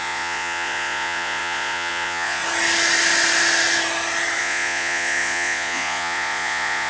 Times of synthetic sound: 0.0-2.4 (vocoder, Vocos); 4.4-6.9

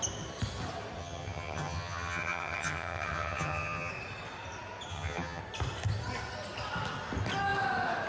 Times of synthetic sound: 1.0-3.9 (vocoder, HiFi-GAN); 4.9-5.4

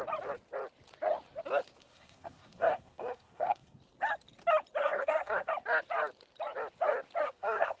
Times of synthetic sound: 1.8-3.8 (codec, SNAC); 4.8-5.5; 7.2-7.8

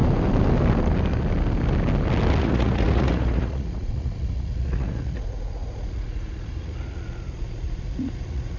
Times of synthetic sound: 2.4-8.6 (vocoder, Vocos)

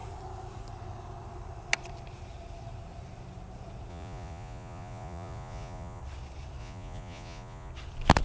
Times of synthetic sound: 3.9-6.0 (vocoder, Vocos); 6.6-7.7

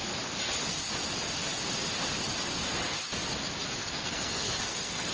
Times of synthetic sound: 3.8-5.1 (codec, SNAC)